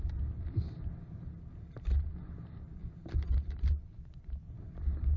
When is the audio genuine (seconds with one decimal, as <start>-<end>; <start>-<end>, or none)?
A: 0.0-5.2